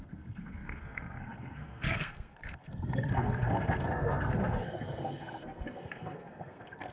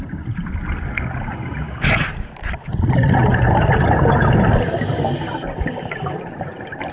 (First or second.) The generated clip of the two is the first